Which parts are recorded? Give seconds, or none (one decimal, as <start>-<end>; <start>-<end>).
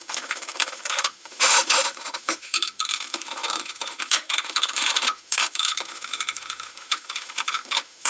none